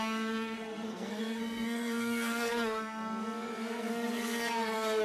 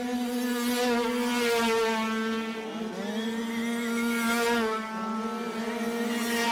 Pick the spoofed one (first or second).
first